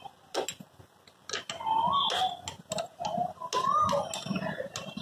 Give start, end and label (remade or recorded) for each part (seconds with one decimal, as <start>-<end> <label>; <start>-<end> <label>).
0.0-5.0 recorded